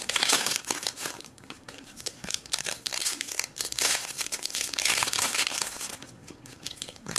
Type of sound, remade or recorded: remade